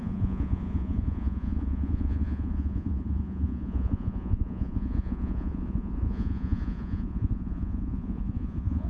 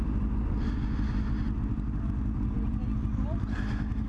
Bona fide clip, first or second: second